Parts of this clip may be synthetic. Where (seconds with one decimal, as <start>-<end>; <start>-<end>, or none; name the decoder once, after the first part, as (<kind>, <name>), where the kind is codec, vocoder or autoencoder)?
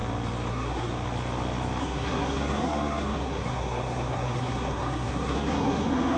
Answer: 0.5-0.9 (codec, SNAC); 1.8-6.2